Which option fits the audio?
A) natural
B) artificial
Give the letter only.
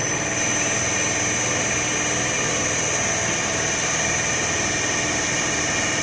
A